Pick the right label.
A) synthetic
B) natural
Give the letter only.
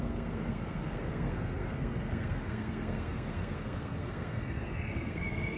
A